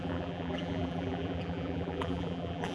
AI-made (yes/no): yes